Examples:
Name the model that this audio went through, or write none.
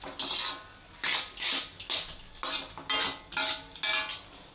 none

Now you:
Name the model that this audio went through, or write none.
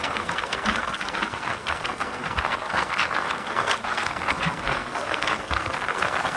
codec, SNAC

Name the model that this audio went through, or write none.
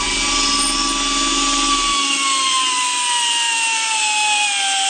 none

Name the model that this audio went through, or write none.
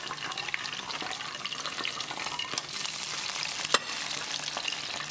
none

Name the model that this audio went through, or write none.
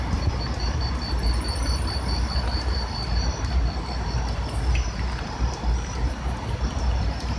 none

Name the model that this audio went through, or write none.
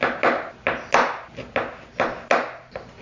none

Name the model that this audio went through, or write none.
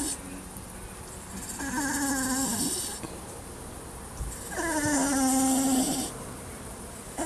none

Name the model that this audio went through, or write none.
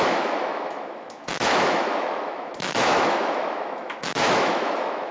autoencoder, DAC-VAE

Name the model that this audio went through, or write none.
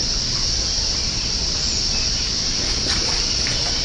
none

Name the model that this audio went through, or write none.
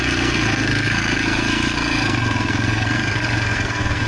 codec, SNAC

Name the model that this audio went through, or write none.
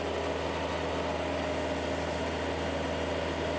none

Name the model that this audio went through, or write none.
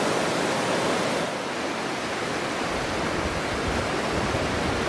none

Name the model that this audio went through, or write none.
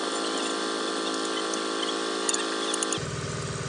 none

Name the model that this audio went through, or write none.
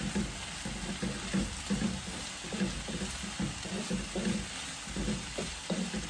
none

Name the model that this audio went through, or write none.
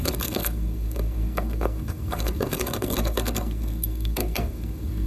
codec, SNAC